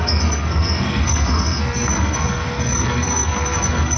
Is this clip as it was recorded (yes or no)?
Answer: no